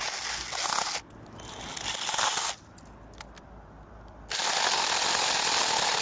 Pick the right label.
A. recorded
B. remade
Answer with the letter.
A